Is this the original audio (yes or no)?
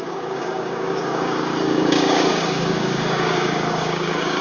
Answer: no